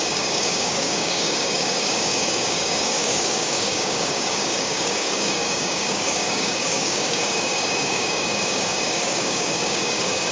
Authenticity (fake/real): fake